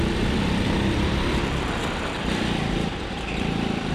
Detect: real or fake fake